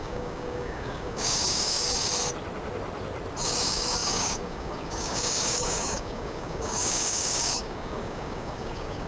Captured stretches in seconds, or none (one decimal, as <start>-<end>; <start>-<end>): 2.1-3.4